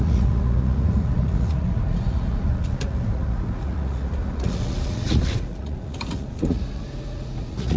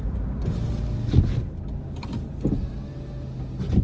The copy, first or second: first